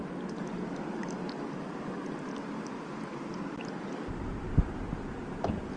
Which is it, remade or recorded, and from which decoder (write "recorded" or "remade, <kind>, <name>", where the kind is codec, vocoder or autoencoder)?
recorded